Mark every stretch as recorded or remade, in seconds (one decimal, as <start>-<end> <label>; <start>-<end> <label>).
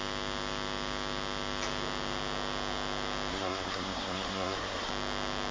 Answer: 0.0-3.3 recorded; 3.3-4.9 remade; 4.9-5.5 recorded